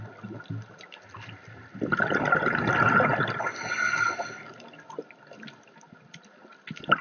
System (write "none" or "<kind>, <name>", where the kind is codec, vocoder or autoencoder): none